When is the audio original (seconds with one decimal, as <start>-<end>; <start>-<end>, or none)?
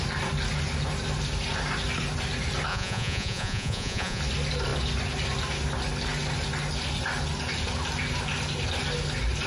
0.0-2.7; 4.2-9.5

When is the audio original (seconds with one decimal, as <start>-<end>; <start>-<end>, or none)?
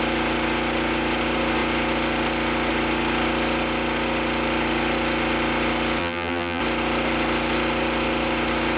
0.0-6.0; 6.6-8.8